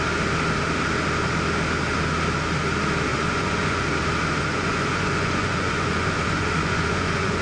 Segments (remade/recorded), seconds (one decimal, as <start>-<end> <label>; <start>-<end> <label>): 0.0-3.1 recorded; 3.1-3.9 remade; 3.9-4.5 recorded; 4.5-7.4 remade